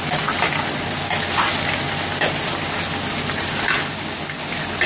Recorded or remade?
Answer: recorded